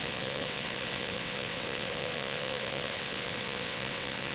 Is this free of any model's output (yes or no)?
no